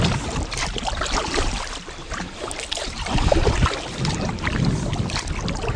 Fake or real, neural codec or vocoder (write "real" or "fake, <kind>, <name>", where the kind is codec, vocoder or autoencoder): real